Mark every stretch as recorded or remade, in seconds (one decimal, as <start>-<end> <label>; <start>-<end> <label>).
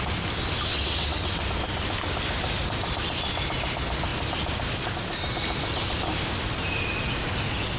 0.0-0.7 recorded; 0.7-1.4 remade; 1.4-7.8 recorded